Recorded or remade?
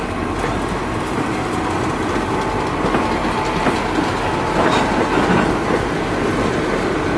recorded